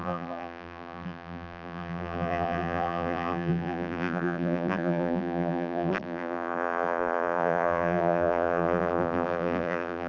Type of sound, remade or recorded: remade